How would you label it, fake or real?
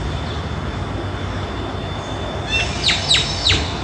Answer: real